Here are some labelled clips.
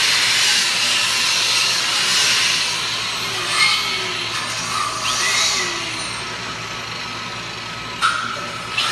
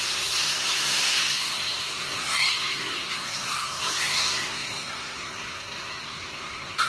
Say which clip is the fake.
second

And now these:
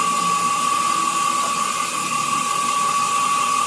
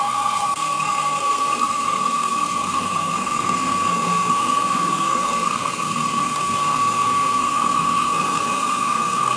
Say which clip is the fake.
second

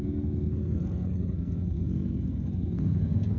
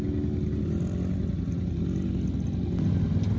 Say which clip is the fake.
first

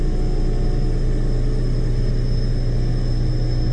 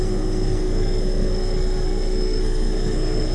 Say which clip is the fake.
second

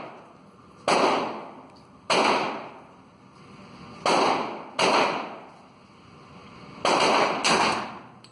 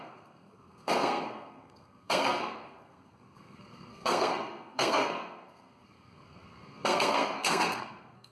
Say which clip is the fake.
second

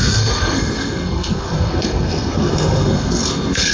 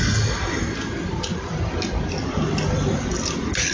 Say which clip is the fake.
first